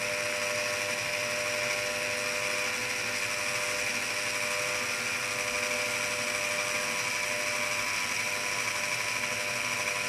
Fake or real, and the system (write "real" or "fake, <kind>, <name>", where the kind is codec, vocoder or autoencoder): real